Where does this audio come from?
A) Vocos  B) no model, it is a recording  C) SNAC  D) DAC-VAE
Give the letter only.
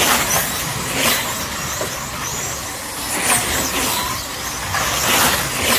B